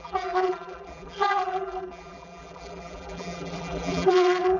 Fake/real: fake